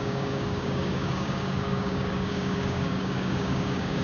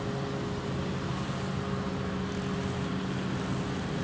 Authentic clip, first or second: second